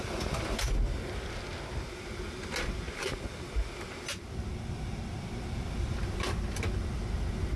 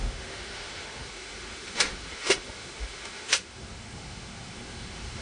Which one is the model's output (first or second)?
second